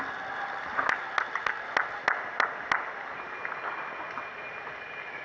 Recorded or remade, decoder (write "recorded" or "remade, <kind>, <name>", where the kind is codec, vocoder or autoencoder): recorded